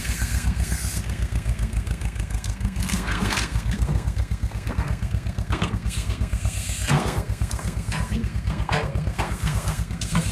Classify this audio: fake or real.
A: fake